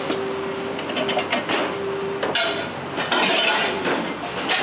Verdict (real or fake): real